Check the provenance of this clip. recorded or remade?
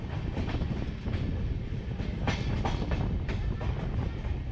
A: recorded